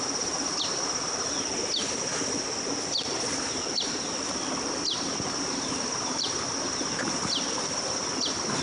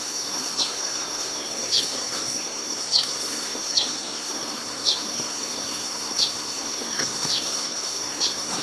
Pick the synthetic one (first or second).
second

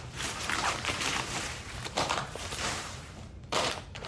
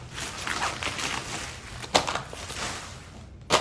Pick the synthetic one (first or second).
first